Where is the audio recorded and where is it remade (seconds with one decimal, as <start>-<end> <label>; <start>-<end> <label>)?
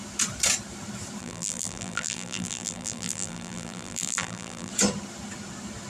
0.0-1.2 recorded; 1.2-4.7 remade; 4.7-5.9 recorded